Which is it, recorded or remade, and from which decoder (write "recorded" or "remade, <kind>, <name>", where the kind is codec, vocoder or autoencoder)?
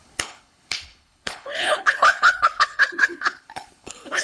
remade, codec, HILCodec